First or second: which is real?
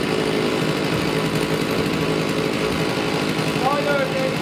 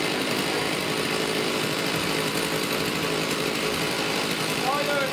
first